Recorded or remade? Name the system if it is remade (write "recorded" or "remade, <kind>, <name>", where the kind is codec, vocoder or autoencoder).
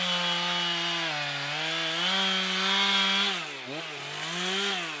recorded